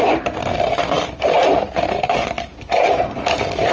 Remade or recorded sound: recorded